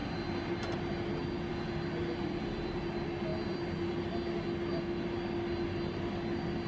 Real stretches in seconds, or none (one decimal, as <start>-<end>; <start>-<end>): 0.0-6.7